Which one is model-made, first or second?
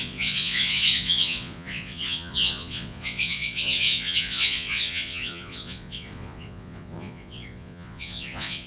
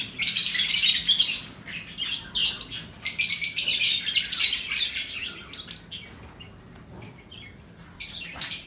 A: first